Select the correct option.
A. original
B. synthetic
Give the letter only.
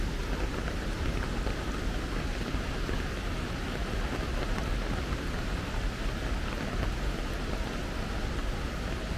A